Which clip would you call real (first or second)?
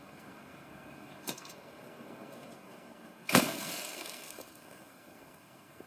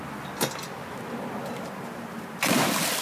second